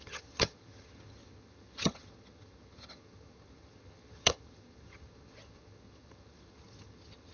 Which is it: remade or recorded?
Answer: remade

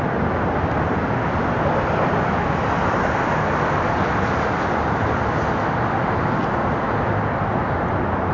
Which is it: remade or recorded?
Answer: recorded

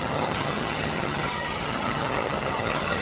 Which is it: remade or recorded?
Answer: remade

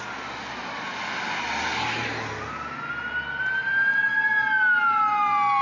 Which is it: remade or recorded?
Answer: recorded